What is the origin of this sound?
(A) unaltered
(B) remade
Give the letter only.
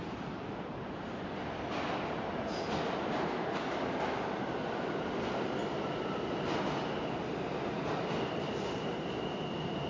A